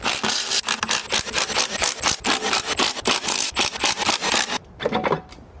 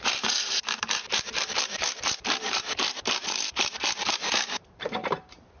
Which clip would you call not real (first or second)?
second